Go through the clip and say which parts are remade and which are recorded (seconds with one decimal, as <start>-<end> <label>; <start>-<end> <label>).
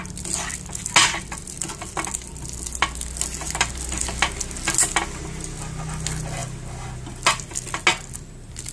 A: 0.0-8.7 recorded